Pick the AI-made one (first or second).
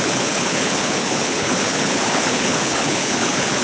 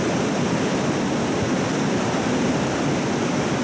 first